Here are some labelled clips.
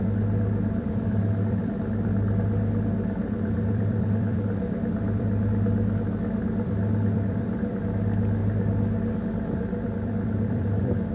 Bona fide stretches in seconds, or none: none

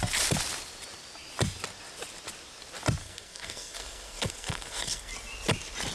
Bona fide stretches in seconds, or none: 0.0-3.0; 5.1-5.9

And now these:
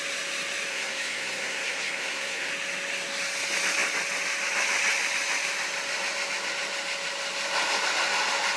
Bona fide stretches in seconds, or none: 0.0-0.7; 2.5-8.6

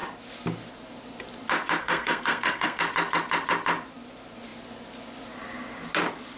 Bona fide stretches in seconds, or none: 0.0-1.8; 2.8-6.4